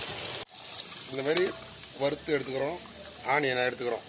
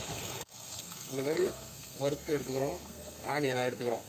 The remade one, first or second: second